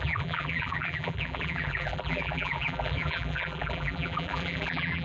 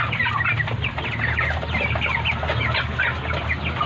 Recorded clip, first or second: second